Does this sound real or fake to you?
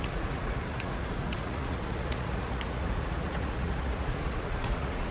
fake